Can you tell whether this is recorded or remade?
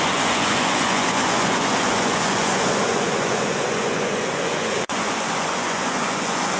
remade